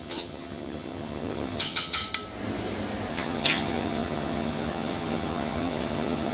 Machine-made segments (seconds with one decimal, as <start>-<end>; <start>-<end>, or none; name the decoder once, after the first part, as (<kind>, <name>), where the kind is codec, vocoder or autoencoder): 0.0-2.0 (vocoder, HiFi-GAN); 3.1-6.3